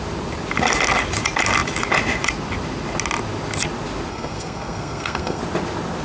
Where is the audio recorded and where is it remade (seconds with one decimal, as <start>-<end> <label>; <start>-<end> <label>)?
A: 0.0-4.1 recorded; 4.1-5.4 remade; 5.4-6.0 recorded